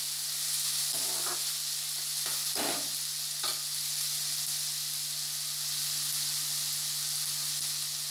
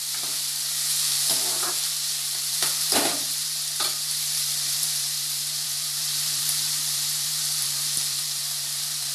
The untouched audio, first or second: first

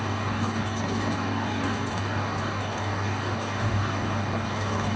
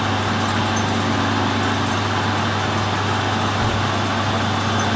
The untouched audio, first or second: second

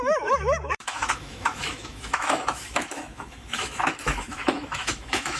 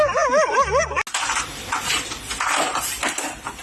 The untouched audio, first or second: second